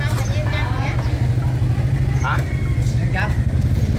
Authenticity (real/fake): real